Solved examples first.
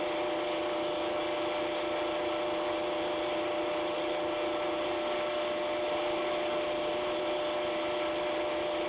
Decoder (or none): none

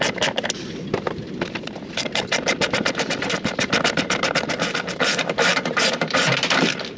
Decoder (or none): vocoder, BigVGAN v2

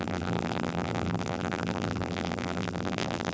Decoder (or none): vocoder, BigVGAN v2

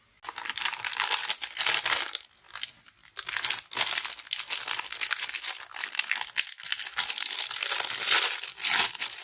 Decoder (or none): none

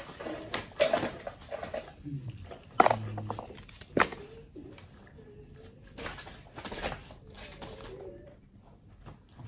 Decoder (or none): none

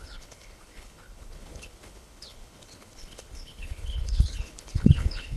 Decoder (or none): codec, HILCodec